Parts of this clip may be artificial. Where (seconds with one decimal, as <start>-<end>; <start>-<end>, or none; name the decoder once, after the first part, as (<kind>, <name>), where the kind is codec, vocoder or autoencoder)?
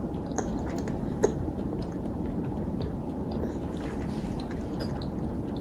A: 0.0-3.0 (vocoder, BigVGAN v2)